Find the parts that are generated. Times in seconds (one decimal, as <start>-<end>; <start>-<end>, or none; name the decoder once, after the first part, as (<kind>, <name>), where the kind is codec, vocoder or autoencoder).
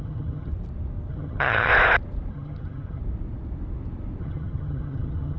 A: 0.0-0.5 (vocoder, HiFi-GAN); 1.1-1.7; 2.3-3.0; 4.2-5.4